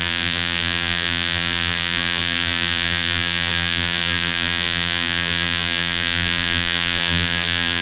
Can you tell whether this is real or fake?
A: fake